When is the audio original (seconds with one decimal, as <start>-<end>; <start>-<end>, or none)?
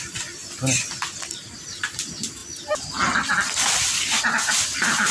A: 0.0-5.1